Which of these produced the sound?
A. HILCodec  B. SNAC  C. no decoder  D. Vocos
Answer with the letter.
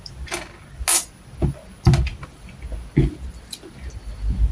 C